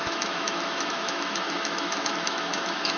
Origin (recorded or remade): remade